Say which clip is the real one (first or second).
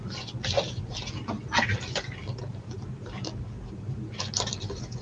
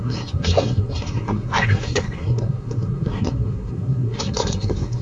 first